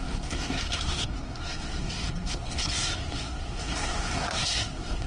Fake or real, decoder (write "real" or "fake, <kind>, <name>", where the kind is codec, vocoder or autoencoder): fake, codec, SNAC